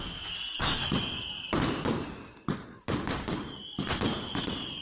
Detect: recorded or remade recorded